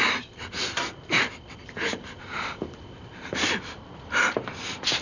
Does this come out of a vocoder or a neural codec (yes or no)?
no